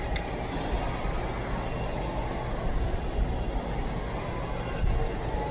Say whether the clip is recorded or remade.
recorded